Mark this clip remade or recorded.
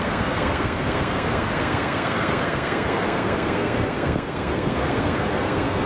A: remade